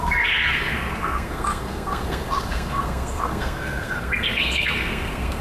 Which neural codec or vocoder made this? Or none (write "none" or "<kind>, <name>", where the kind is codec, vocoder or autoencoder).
codec, SNAC